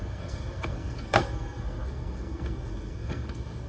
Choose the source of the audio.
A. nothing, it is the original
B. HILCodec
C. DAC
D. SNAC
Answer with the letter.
D